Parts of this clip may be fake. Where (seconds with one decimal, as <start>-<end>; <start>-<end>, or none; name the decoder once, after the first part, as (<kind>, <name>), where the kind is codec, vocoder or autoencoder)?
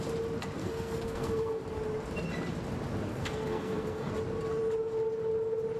0.6-1.6 (codec, SNAC); 3.1-4.1